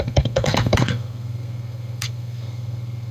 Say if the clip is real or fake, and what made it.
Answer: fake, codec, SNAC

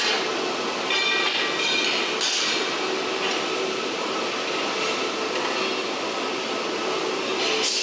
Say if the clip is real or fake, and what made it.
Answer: real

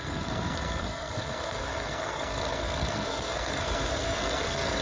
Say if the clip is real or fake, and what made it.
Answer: fake, codec, SNAC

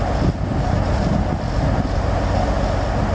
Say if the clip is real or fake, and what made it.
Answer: real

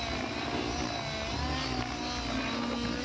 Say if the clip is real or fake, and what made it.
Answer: real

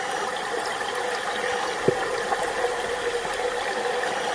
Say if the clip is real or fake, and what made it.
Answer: real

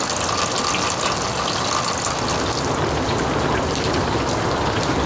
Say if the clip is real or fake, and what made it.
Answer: real